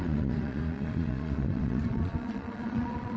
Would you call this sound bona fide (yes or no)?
no